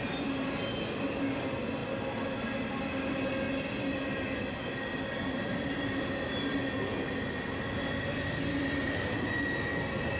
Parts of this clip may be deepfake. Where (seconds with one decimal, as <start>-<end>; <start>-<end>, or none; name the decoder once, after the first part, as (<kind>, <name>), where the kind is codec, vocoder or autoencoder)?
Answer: none